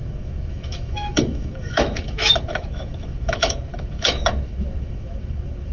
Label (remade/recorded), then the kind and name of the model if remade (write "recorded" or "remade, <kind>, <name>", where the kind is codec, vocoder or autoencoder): remade, autoencoder, DAC-VAE